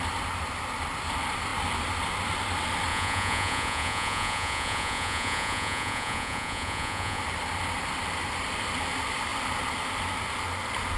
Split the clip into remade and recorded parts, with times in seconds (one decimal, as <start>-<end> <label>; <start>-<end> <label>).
0.0-2.9 recorded; 2.9-7.2 remade; 7.2-11.0 recorded